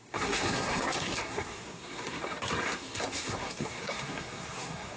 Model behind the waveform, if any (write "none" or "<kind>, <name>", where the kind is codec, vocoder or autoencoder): codec, SNAC